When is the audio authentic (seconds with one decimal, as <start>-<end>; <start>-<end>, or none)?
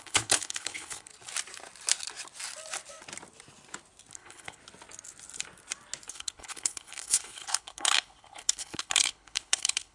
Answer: 1.1-4.1; 4.6-6.1